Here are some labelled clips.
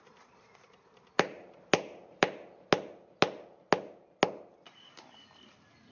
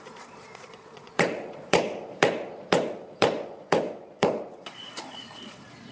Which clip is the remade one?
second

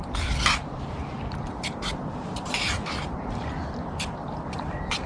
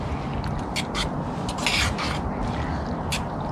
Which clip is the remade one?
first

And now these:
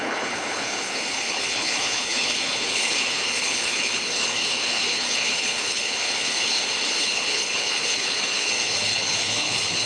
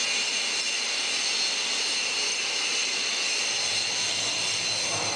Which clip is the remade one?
first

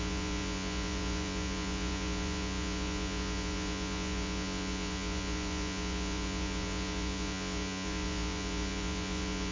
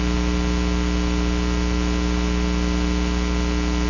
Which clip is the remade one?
first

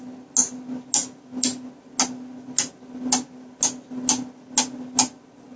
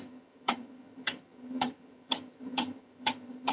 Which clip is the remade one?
second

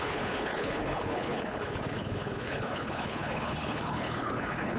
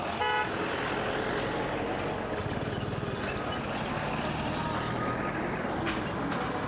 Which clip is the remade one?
first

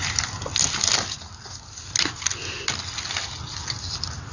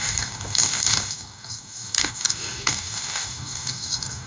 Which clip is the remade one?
second